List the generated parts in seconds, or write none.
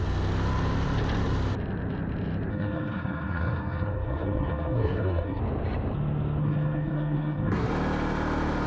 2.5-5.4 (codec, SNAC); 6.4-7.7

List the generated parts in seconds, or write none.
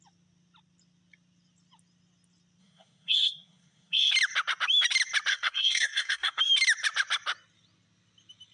2.6-4.1 (codec, SNAC); 5.3-6.4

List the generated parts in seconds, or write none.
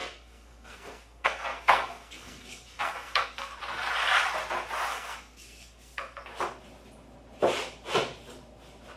0.0-3.6 (codec, SNAC); 4.9-6.2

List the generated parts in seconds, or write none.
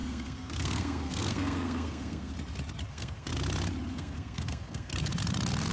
0.0-2.3 (codec, SNAC); 2.9-3.3; 3.9-4.9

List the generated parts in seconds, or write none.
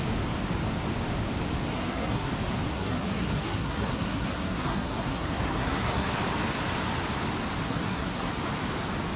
1.7-2.3 (codec, SNAC); 2.7-6.1; 7.6-8.3